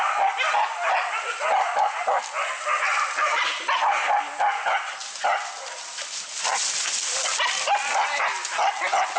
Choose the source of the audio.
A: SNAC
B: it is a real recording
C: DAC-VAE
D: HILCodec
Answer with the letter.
B